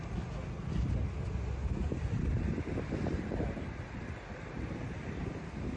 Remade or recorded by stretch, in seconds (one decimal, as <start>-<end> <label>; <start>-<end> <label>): 0.0-1.8 recorded; 1.8-5.3 remade; 5.3-5.8 recorded